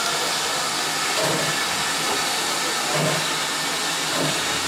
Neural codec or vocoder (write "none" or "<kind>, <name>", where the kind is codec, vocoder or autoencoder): none